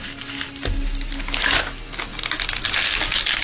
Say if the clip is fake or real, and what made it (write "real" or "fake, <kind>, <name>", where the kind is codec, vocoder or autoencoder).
real